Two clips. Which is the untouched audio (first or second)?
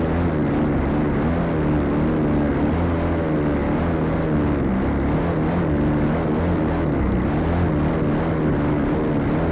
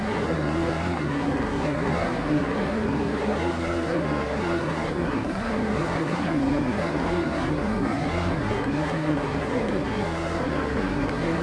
first